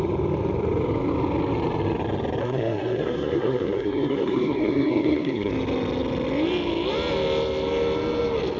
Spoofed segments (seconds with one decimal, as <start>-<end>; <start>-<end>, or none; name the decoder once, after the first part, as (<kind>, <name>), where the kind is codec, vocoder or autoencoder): 2.4-5.5 (codec, SNAC)